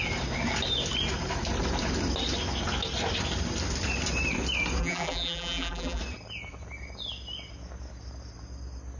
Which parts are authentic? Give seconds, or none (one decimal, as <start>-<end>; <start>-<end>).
0.0-4.8; 6.0-9.0